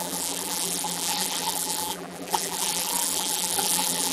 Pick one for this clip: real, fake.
fake